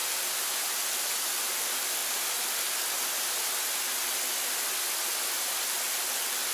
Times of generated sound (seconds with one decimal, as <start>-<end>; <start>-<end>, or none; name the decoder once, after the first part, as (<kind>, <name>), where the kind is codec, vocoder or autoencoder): none